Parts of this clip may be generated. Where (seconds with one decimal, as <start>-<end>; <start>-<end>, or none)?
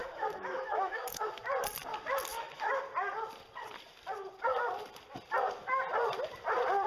0.0-1.4; 2.3-2.8